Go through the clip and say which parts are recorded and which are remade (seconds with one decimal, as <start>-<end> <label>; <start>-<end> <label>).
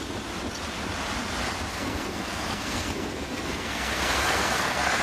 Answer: 0.0-1.7 recorded; 1.7-5.0 remade